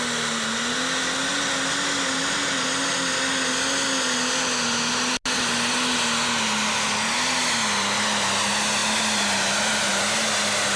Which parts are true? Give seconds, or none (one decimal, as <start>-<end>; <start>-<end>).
0.0-10.8